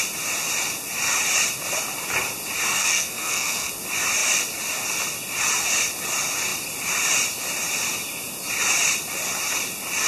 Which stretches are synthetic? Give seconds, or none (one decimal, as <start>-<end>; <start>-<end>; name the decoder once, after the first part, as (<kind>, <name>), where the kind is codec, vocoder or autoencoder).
2.7-3.7 (codec, SNAC)

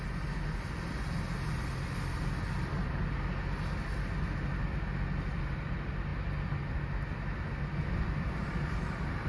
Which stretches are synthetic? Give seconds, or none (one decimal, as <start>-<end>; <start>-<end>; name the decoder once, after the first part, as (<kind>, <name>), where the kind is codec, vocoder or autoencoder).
none

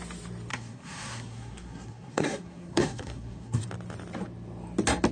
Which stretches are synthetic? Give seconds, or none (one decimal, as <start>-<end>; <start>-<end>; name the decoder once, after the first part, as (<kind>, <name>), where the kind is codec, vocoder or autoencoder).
0.5-3.6 (codec, SNAC)

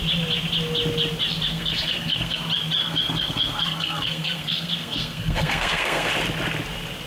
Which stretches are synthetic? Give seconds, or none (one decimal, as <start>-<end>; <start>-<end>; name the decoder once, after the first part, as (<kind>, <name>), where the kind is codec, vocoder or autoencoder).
1.5-2.4 (codec, SNAC); 2.8-6.1

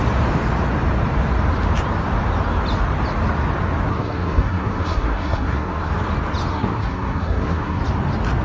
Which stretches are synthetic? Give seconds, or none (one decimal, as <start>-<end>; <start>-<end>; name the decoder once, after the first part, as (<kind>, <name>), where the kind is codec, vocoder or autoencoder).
3.9-5.9 (codec, SNAC); 6.5-7.8

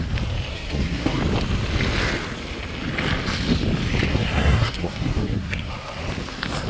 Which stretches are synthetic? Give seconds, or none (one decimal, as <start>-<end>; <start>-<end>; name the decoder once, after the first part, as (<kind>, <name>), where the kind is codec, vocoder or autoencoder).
0.5-1.2 (codec, SNAC); 4.1-5.7

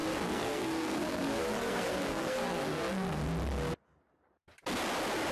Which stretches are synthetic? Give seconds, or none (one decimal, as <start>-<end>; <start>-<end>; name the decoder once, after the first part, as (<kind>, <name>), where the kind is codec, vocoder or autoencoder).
0.0-3.2 (codec, SNAC)